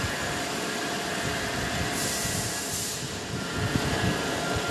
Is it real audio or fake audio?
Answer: real